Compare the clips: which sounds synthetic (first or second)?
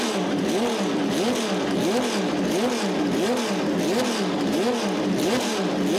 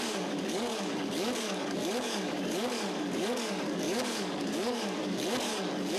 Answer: second